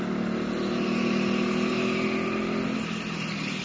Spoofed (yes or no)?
no